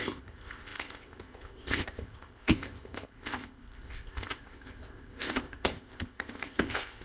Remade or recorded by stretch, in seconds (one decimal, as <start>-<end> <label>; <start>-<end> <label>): 0.0-7.0 remade